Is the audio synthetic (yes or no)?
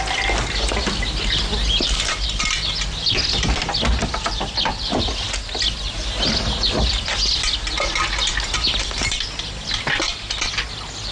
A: no